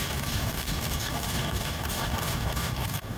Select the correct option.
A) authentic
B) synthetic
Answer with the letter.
B